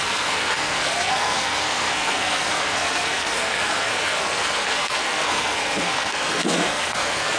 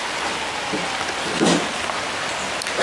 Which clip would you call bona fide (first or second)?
second